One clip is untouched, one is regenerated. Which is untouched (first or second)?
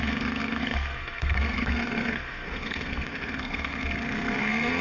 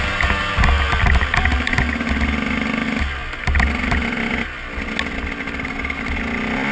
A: second